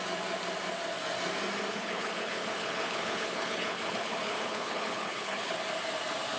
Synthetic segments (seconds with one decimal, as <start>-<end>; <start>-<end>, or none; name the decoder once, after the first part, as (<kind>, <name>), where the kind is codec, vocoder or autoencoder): 1.7-5.5 (codec, HILCodec)